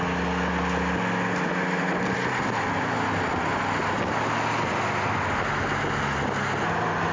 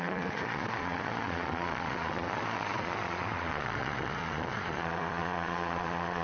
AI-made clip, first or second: second